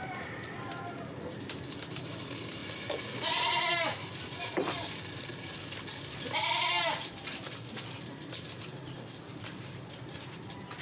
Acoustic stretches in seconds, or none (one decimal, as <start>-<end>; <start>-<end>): none